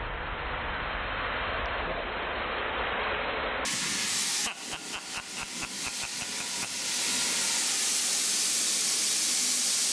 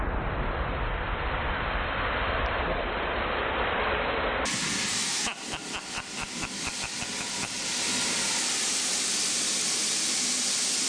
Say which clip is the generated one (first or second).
second